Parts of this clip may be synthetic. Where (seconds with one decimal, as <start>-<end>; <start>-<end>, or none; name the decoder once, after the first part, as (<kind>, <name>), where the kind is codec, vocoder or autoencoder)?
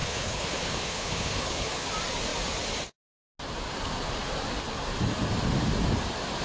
0.0-1.9 (codec, HILCodec)